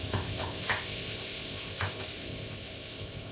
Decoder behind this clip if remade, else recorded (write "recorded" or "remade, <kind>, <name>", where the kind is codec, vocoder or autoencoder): remade, codec, ZipCodec